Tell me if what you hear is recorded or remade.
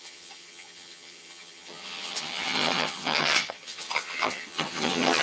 remade